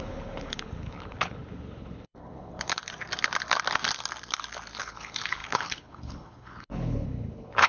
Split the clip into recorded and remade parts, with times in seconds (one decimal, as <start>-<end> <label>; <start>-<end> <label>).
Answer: 0.0-2.8 remade; 2.8-4.8 recorded; 4.8-7.7 remade